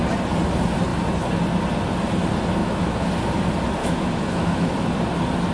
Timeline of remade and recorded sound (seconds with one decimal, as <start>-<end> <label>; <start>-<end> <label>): 0.0-2.6 recorded; 2.6-3.1 remade; 3.1-3.8 recorded; 3.8-4.7 remade; 4.7-5.5 recorded